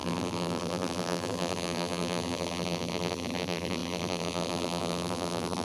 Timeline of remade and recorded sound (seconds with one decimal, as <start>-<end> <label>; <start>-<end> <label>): 0.0-5.6 remade